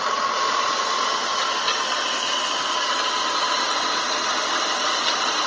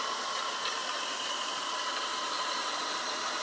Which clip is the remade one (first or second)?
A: second